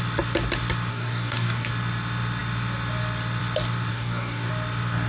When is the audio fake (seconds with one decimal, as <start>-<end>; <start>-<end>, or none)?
0.9-1.7; 3.9-4.5